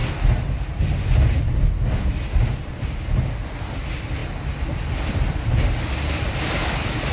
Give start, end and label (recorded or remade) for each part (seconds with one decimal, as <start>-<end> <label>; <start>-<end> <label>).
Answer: 0.0-7.1 recorded